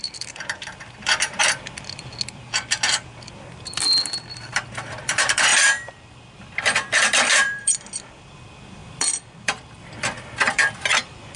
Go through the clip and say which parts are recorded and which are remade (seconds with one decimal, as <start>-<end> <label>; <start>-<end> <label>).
0.0-2.1 remade; 2.1-4.2 recorded; 4.2-11.4 remade